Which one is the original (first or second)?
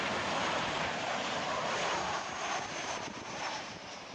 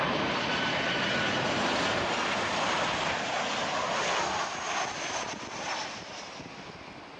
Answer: second